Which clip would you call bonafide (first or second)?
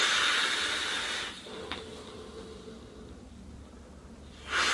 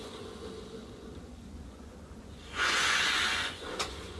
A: first